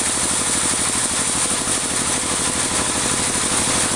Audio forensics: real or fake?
real